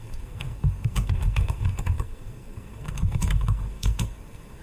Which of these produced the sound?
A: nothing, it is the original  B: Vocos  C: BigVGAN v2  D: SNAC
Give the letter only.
D